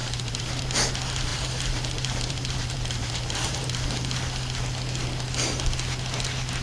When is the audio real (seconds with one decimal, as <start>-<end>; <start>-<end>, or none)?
0.6-1.3; 3.8-6.6